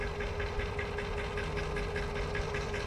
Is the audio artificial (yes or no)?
no